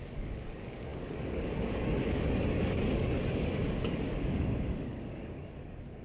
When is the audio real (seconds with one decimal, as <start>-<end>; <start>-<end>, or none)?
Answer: none